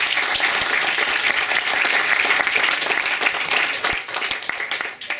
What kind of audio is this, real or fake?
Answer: real